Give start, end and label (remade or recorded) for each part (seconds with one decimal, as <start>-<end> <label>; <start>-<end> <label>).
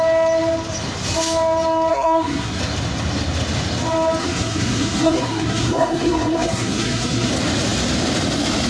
0.0-1.9 recorded; 1.9-2.6 remade; 2.6-4.2 recorded; 4.2-7.3 remade; 7.3-8.7 recorded